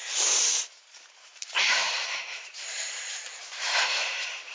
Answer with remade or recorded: remade